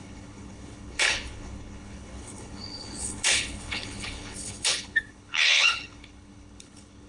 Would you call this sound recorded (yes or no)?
no